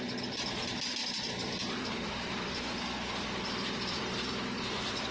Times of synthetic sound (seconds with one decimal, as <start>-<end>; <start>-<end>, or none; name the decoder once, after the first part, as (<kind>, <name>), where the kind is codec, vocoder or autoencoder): 1.0-4.1 (vocoder, BigVGAN v2)

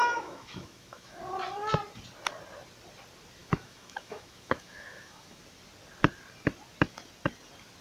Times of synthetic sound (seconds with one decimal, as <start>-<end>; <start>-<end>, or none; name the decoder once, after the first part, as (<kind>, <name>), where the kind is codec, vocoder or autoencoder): 0.0-1.2 (autoencoder, DAC-VAE); 3.4-5.4

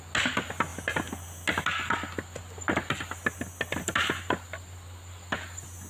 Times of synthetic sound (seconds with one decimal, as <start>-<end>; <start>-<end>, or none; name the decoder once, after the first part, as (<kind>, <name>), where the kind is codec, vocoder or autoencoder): none

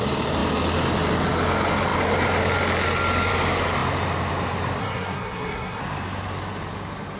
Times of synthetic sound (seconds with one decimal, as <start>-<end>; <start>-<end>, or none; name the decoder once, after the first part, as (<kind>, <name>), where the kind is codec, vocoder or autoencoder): 4.8-5.8 (codec, SNAC)